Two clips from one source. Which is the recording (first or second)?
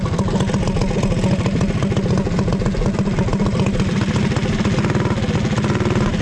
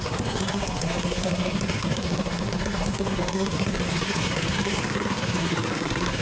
first